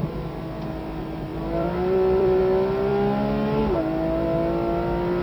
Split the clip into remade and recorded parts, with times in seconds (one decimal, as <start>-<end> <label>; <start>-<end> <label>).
0.0-1.3 recorded; 1.3-2.4 remade; 2.4-5.2 recorded